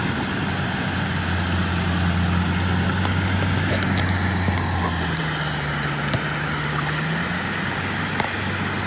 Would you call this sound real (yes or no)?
yes